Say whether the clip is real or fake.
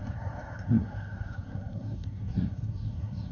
fake